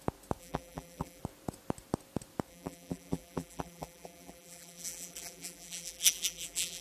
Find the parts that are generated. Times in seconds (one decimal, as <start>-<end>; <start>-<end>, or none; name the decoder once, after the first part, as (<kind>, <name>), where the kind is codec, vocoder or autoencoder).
0.4-1.2 (vocoder, BigVGAN v2); 2.5-6.8